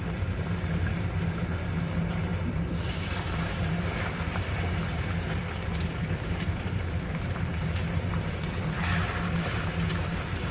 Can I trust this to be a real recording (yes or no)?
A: no